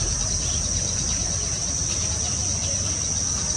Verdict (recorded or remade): recorded